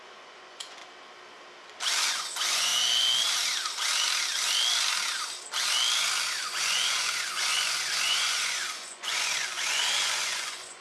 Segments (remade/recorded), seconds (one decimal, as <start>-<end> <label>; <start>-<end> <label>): 0.0-0.8 remade; 0.8-2.1 recorded; 2.1-2.7 remade; 2.7-6.2 recorded; 6.2-10.8 remade